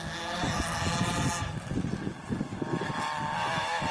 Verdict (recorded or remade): recorded